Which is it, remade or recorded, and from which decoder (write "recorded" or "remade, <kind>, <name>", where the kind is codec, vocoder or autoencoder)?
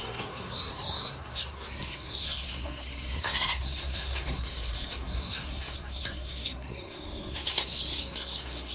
remade, codec, SNAC